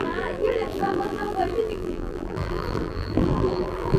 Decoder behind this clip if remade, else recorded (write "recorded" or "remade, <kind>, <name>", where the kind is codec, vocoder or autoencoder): remade, vocoder, BigVGAN v2